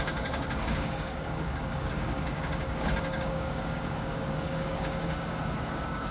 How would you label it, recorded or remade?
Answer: remade